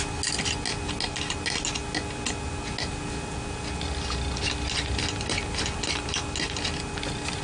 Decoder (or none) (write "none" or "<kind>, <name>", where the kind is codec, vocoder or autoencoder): none